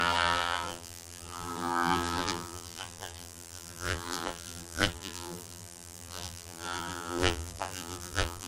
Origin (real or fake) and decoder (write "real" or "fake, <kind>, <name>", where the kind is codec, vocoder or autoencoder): fake, vocoder, BigVGAN v2